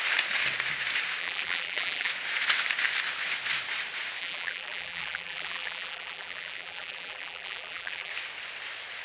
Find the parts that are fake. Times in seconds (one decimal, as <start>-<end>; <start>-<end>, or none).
1.2-2.1; 4.2-8.1